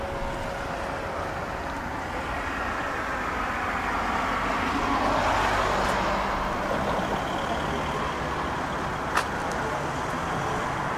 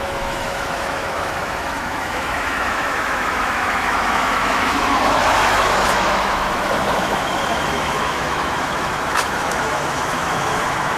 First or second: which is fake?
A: second